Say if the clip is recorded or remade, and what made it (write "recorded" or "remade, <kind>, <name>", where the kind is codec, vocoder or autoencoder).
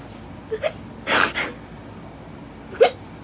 recorded